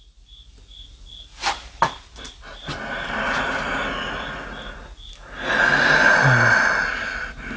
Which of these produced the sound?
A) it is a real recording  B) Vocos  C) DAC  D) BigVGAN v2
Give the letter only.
A